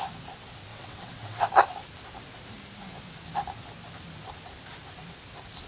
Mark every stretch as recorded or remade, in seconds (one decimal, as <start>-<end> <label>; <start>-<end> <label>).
0.0-0.7 recorded; 0.7-1.4 remade; 1.4-5.7 recorded